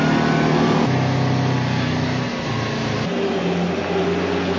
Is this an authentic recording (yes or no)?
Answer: yes